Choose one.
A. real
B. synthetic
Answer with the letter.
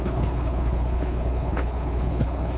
B